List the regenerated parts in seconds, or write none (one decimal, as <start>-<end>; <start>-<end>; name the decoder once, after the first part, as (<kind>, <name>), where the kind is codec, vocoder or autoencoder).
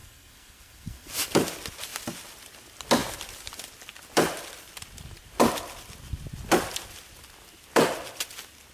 0.0-1.1 (codec, SNAC)